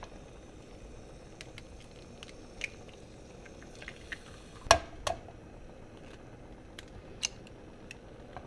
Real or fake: real